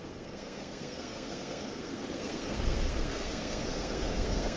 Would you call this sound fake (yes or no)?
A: yes